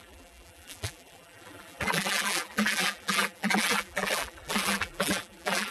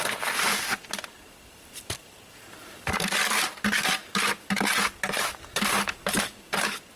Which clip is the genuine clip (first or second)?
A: second